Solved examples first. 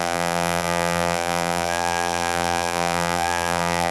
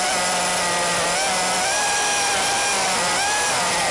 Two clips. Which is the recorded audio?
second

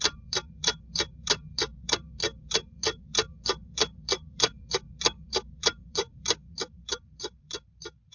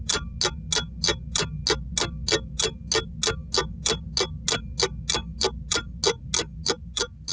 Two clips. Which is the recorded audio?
second